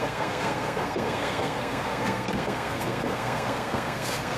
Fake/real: fake